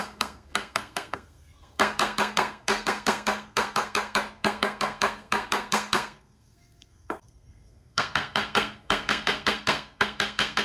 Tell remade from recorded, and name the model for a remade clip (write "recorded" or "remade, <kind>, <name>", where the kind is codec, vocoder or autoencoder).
remade, codec, SNAC